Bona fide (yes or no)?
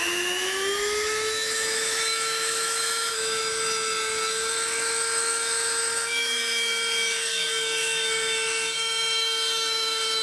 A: no